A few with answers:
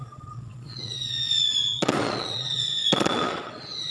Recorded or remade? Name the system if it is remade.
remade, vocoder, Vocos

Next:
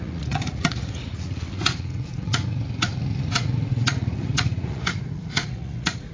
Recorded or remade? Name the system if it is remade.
remade, vocoder, Vocos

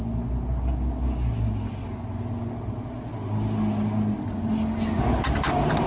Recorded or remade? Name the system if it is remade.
recorded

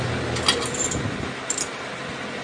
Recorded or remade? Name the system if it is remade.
recorded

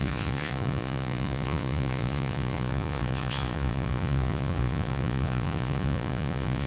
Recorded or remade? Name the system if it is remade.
remade, vocoder, Vocos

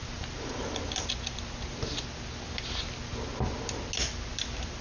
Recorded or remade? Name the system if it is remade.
recorded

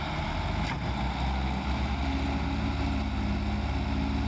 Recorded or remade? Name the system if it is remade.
recorded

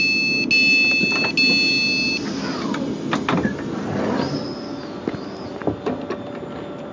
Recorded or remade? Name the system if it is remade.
recorded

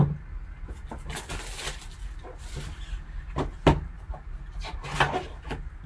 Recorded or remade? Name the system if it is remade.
recorded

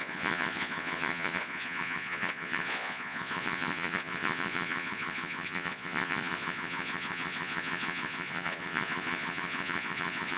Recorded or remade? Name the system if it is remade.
remade, vocoder, Vocos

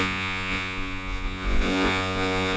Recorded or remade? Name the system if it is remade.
remade, vocoder, Vocos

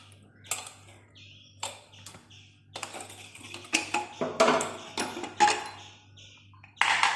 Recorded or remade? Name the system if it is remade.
recorded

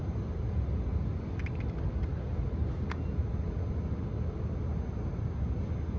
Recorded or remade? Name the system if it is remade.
recorded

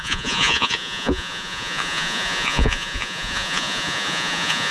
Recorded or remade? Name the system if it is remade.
remade, vocoder, Vocos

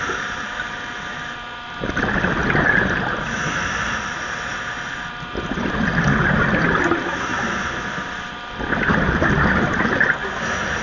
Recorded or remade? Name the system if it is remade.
recorded